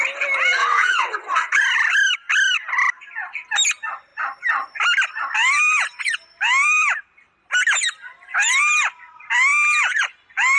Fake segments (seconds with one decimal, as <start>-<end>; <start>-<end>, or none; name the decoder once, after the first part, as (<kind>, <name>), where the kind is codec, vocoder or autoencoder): 0.6-1.6 (vocoder, WaveNeXt)